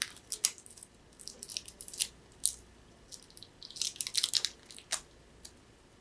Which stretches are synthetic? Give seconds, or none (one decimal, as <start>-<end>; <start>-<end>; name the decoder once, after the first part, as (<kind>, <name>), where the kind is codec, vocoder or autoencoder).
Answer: none